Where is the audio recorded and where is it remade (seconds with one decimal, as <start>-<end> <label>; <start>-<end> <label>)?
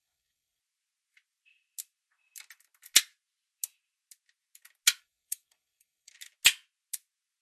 0.0-0.6 remade; 0.6-5.0 recorded; 5.0-6.1 remade; 6.1-7.4 recorded